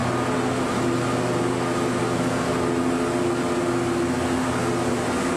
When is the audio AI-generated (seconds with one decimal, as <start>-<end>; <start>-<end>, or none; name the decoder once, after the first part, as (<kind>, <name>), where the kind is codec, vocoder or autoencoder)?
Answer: none